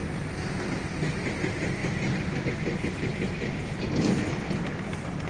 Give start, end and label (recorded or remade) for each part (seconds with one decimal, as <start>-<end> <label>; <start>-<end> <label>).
0.0-5.3 recorded

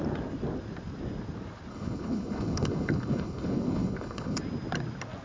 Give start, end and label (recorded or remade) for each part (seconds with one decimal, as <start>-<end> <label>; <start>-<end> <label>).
0.0-1.7 recorded; 1.7-4.4 remade; 4.4-5.2 recorded

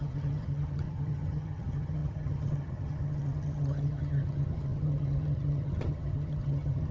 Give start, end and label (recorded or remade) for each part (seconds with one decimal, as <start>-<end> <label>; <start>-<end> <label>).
0.0-6.9 remade

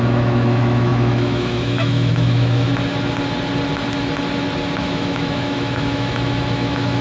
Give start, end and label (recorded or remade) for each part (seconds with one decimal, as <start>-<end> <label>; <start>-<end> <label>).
0.0-2.7 remade; 2.7-4.8 recorded; 4.8-7.0 remade